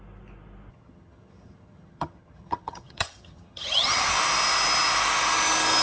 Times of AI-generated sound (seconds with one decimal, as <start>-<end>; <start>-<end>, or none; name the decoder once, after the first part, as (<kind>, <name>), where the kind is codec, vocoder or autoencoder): 0.7-4.1 (vocoder, HiFi-GAN)